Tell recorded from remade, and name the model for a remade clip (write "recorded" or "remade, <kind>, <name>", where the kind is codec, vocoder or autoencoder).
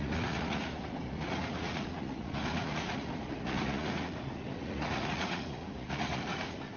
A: remade, vocoder, Vocos